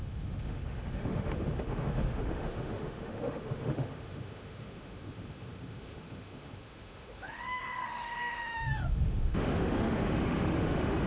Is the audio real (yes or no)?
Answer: no